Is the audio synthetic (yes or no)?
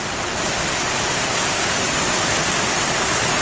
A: no